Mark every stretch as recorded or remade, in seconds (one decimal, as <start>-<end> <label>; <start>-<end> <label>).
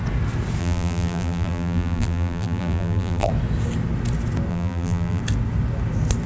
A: 0.0-0.6 recorded; 0.6-3.3 remade; 3.3-4.5 recorded; 4.5-5.2 remade; 5.2-6.3 recorded